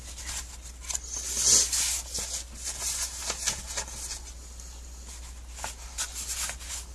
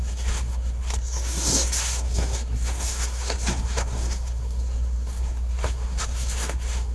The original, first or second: first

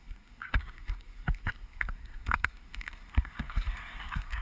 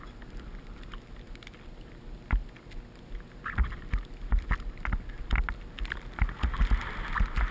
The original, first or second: second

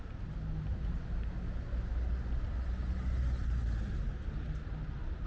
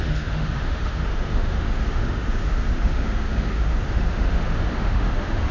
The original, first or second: first